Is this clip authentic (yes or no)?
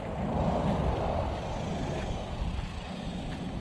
yes